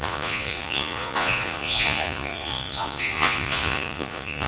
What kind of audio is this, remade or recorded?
remade